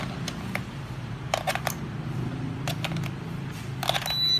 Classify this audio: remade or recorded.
recorded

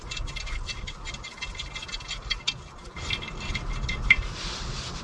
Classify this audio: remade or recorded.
remade